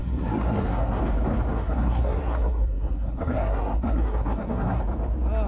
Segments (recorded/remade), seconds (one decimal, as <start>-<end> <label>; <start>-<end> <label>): 0.0-1.0 remade; 1.0-1.5 recorded; 1.5-4.8 remade; 4.8-5.5 recorded